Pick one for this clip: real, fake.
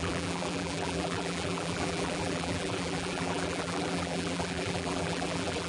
fake